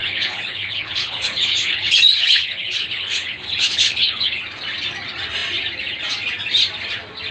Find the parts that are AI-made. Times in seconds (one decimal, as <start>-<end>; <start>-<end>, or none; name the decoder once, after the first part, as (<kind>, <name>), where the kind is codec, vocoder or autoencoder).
0.0-4.4 (codec, HILCodec)